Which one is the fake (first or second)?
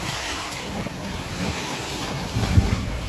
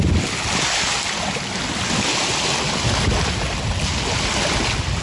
first